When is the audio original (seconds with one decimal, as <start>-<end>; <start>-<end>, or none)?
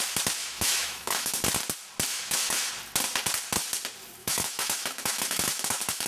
0.0-0.4; 1.4-2.1; 2.7-4.2